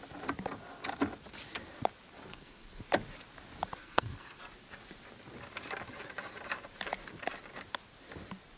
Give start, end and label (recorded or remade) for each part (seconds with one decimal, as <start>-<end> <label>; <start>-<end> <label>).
0.0-2.3 recorded; 2.3-2.8 remade; 2.8-3.8 recorded; 3.8-4.4 remade; 4.4-8.6 recorded